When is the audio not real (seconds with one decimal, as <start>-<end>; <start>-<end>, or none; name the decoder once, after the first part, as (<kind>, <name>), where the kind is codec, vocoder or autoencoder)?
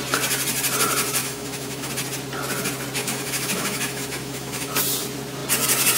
1.2-1.9 (autoencoder, DAC-VAE); 3.0-4.7